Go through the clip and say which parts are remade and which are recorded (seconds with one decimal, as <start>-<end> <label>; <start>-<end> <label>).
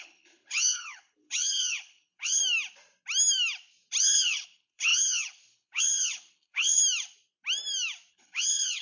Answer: 0.0-2.4 remade; 2.4-4.0 recorded; 4.0-6.8 remade; 6.8-8.1 recorded; 8.1-8.8 remade